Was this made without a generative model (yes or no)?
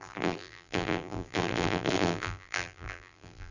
no